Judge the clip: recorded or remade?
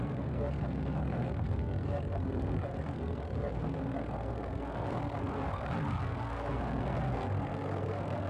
remade